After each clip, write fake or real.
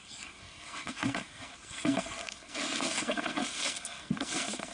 fake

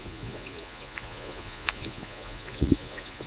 fake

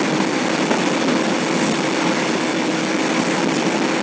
real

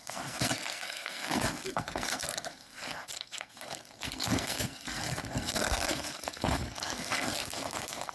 fake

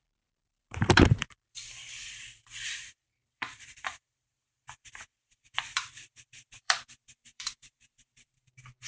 fake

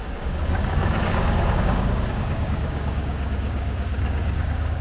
fake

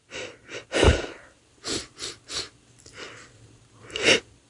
real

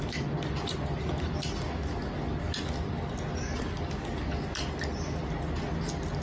real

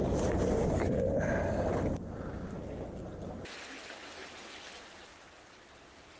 real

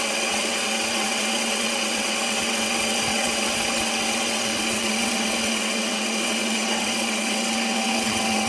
fake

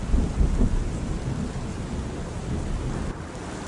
real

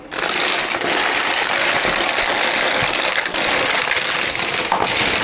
real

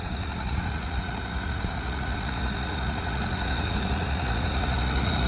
fake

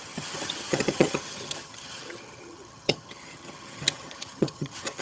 fake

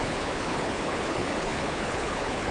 fake